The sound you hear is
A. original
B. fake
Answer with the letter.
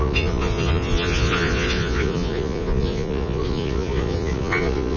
B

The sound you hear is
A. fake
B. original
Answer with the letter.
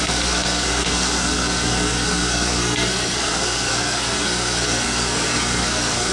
A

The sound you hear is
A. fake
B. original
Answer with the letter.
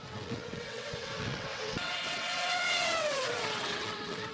A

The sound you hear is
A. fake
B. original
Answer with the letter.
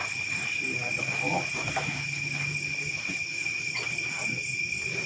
B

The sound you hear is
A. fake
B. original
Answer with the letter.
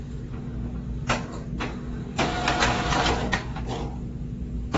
B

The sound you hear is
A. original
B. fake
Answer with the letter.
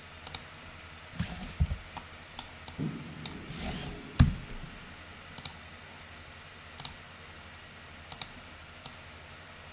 A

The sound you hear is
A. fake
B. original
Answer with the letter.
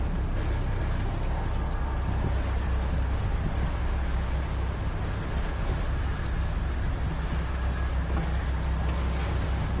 B